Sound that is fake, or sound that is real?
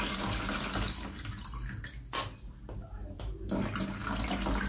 real